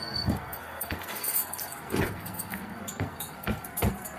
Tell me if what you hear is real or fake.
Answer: fake